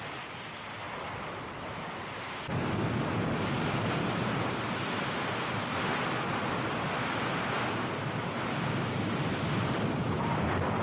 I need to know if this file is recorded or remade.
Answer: recorded